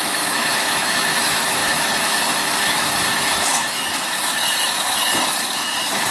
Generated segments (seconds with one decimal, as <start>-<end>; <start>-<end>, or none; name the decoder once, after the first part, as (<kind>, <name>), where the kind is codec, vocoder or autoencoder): 0.0-6.1 (autoencoder, DAC-VAE)